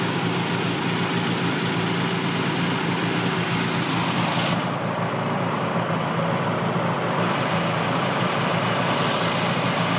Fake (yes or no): no